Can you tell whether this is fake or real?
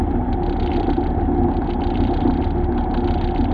real